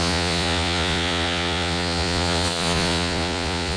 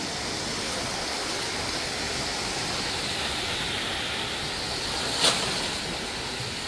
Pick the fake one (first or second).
first